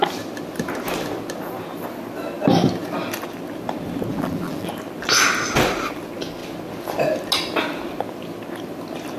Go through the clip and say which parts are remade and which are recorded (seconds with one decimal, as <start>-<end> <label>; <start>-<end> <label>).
0.0-4.1 recorded; 4.1-4.7 remade; 4.7-9.2 recorded